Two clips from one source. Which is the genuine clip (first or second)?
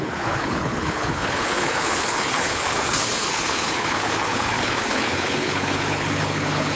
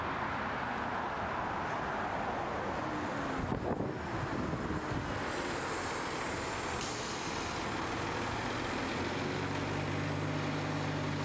second